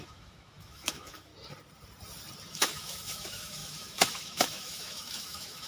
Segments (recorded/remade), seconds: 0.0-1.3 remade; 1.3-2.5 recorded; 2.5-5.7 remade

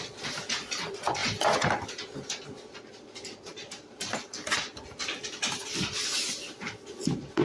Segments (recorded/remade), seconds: 0.0-7.4 recorded

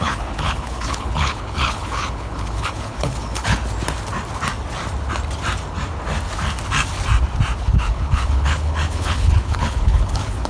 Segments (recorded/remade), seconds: 0.0-3.6 remade; 3.6-7.6 recorded; 7.6-10.5 remade

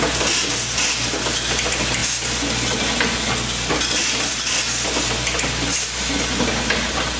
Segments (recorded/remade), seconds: 0.0-7.2 recorded

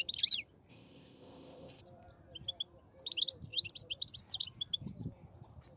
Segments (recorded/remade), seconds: 0.0-0.7 recorded; 0.7-1.8 remade; 1.8-5.8 recorded

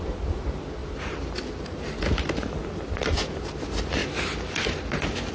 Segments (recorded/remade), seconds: 0.0-0.8 recorded; 0.8-1.4 remade; 1.4-5.3 recorded

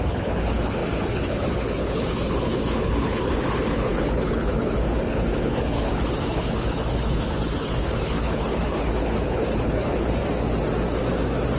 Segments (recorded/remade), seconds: 0.0-10.2 remade; 10.2-11.6 recorded

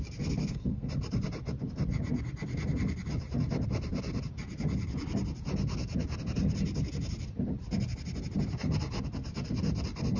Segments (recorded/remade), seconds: 0.0-0.4 recorded; 0.4-0.9 remade; 0.9-10.2 recorded